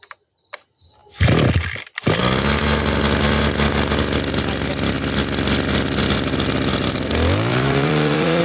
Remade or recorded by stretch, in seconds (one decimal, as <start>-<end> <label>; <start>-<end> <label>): 0.0-7.5 recorded; 7.5-8.4 remade